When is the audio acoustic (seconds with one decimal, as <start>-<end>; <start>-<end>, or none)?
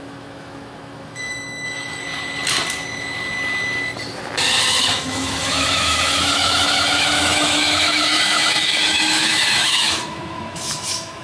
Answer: 2.0-4.8